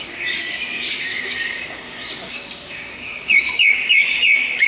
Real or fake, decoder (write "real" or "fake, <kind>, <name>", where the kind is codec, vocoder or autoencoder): fake, codec, DAC